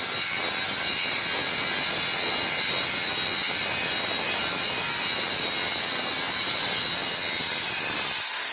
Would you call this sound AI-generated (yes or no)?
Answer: no